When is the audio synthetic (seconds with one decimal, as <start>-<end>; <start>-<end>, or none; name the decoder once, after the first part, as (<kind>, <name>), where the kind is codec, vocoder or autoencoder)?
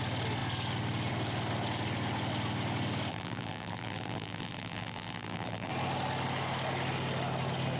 3.1-5.7 (vocoder, BigVGAN v2)